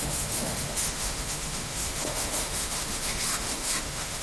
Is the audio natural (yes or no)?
no